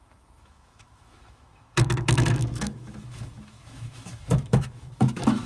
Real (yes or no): no